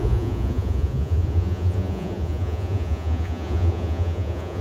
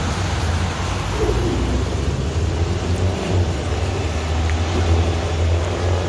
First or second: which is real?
second